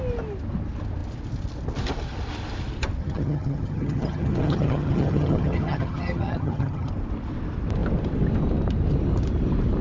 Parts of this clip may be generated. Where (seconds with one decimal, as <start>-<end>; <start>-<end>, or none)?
3.0-6.9